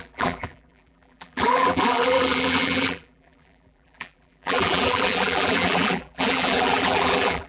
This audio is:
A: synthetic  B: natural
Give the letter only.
A